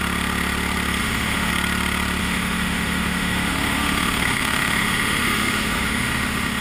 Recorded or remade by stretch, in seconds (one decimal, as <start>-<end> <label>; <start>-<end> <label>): 0.0-1.0 recorded; 1.0-1.5 remade; 1.5-2.2 recorded; 2.2-6.6 remade